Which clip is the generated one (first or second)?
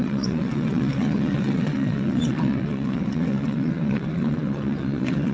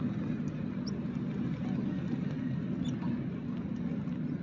first